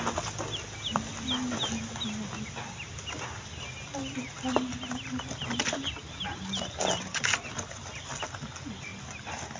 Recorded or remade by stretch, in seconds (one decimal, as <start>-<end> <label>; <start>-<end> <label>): 0.0-9.6 recorded